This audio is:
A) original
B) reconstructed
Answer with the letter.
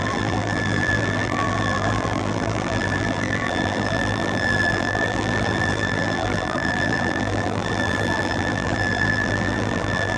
B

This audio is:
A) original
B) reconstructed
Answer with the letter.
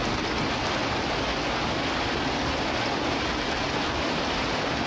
A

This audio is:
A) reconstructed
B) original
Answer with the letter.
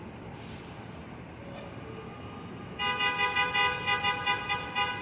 B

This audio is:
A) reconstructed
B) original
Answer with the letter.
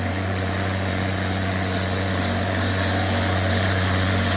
A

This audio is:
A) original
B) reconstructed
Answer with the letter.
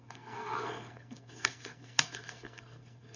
B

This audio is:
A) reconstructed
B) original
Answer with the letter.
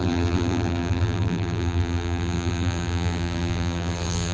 A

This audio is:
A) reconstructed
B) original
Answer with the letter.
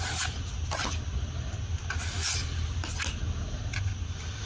B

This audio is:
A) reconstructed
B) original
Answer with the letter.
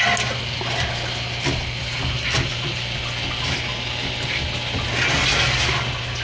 B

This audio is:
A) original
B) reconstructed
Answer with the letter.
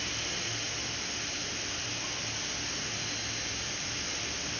A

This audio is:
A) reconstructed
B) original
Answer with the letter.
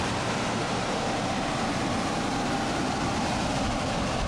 A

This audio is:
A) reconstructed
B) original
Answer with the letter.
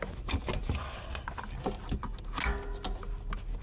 B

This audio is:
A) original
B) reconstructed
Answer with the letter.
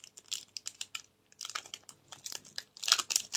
A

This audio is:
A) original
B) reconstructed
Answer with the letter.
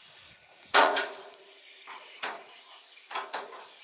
B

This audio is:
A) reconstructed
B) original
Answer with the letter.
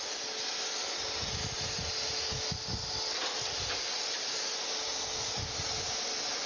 B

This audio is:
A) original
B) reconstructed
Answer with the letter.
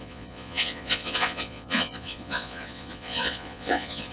B